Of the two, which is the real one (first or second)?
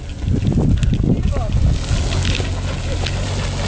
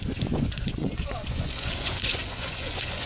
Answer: first